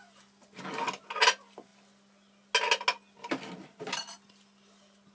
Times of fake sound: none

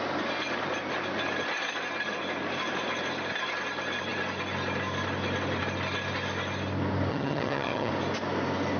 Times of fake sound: 7.1-7.9 (vocoder, HiFi-GAN)

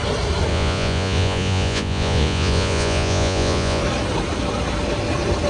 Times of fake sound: 0.5-3.8 (vocoder, Vocos)

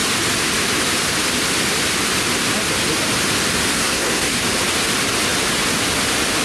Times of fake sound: 3.7-4.4 (codec, SNAC)

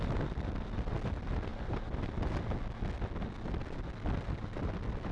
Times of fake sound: none